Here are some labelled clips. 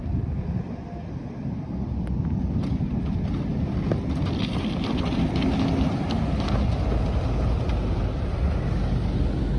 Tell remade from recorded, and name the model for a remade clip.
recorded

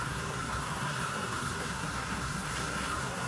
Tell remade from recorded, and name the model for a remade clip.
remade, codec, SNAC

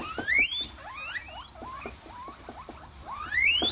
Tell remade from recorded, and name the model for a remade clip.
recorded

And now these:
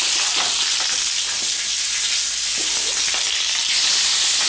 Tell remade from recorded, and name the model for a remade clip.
recorded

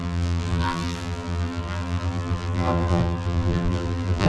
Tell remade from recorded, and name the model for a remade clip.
remade, vocoder, BigVGAN v2